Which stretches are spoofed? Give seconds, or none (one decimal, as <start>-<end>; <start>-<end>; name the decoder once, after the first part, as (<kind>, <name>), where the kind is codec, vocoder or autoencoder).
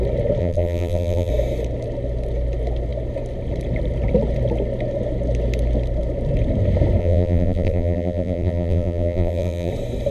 0.4-1.3 (vocoder, BigVGAN v2); 7.0-9.7